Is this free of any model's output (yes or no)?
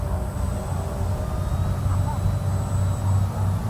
yes